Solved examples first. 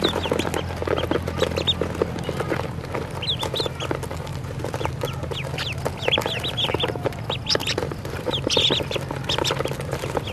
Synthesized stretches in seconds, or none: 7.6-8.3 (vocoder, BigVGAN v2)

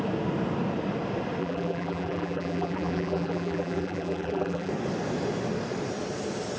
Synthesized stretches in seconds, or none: 1.4-4.7 (vocoder, BigVGAN v2)

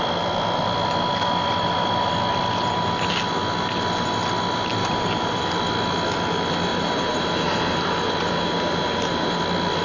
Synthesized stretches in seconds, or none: 4.8-5.4 (vocoder, BigVGAN v2); 6.7-9.4